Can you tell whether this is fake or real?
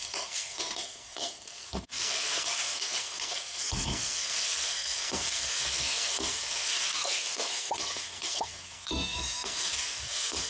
fake